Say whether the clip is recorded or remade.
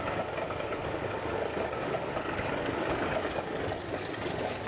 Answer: remade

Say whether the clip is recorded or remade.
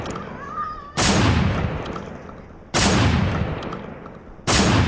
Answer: recorded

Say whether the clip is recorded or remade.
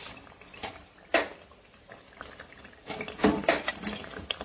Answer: recorded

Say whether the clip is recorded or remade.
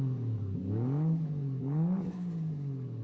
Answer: remade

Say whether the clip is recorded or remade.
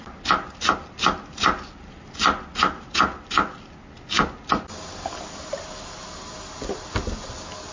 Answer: recorded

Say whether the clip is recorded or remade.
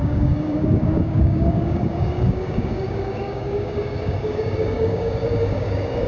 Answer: remade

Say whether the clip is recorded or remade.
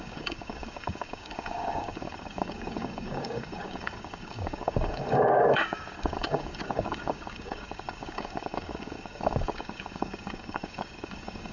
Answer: remade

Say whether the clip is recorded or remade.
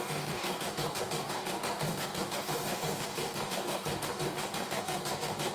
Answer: remade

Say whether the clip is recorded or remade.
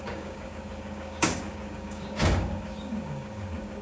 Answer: remade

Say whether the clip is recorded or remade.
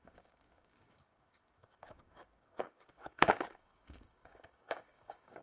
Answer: remade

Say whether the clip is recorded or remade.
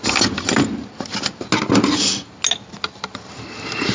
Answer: recorded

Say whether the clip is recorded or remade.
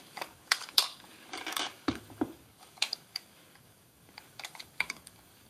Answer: remade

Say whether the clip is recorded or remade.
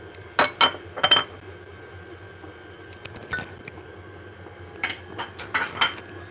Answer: recorded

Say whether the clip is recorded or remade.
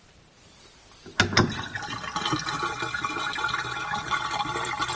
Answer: recorded